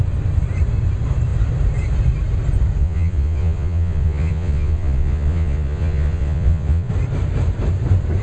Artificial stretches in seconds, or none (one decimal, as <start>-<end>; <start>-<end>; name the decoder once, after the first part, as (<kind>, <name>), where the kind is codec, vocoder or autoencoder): 2.8-6.9 (vocoder, Vocos)